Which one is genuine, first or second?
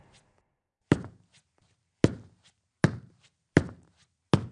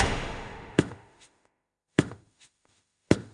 first